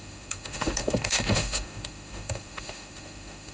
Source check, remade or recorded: remade